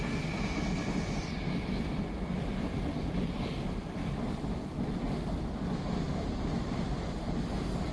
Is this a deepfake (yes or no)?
no